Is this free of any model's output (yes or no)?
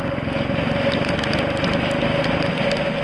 yes